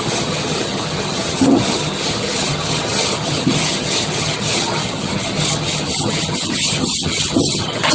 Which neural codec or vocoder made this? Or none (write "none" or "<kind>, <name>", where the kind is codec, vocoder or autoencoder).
vocoder, HiFi-GAN